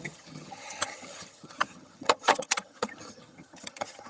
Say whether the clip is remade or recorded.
remade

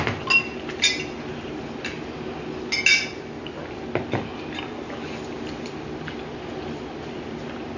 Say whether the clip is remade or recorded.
recorded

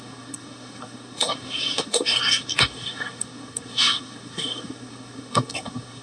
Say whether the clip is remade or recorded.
remade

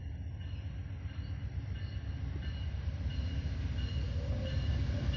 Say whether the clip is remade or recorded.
recorded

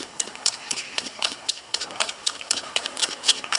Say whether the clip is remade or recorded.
remade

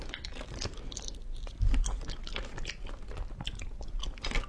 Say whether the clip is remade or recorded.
recorded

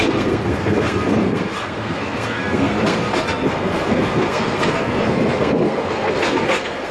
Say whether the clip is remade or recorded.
remade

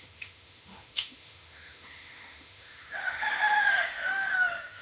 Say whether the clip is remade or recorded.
remade